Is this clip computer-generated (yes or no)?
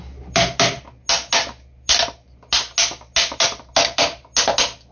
no